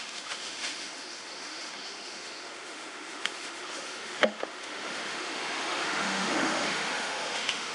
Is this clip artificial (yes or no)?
yes